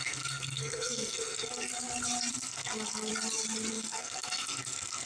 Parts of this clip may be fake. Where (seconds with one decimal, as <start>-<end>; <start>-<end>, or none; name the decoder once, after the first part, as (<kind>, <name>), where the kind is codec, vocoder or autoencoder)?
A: 0.0-1.7 (codec, SNAC); 2.3-3.1; 3.7-5.1